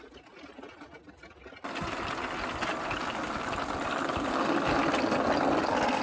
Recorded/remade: recorded